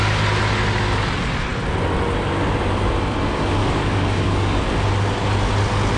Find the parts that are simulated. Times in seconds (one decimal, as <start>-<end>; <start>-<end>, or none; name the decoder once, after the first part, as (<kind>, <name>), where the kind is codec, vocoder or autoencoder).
3.6-4.6 (codec, DAC)